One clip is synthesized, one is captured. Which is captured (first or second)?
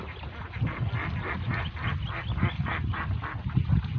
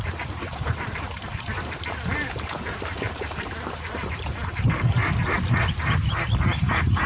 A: first